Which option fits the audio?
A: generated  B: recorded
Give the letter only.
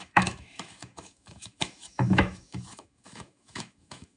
A